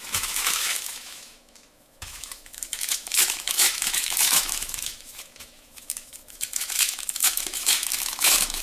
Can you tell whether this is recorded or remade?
remade